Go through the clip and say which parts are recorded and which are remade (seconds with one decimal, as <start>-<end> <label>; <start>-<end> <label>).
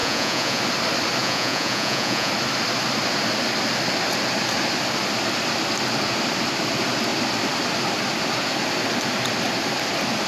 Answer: 0.0-0.6 remade; 0.6-1.2 recorded; 1.2-2.3 remade; 2.3-10.3 recorded